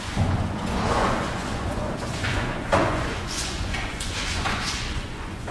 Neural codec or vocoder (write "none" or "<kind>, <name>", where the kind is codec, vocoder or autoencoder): vocoder, Vocos